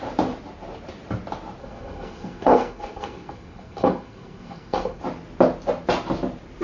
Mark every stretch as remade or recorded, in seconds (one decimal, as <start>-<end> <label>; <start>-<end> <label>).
0.0-1.6 recorded; 1.6-5.0 remade; 5.0-6.6 recorded